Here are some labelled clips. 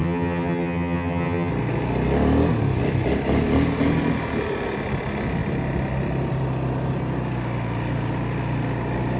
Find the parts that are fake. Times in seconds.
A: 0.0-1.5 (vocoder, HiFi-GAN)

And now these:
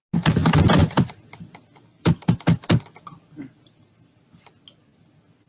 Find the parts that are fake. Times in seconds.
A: 0.4-2.3 (vocoder, BigVGAN v2)